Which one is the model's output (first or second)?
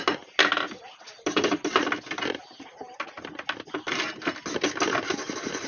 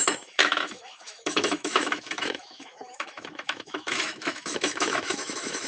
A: second